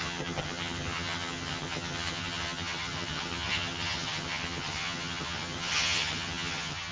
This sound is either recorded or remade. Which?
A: remade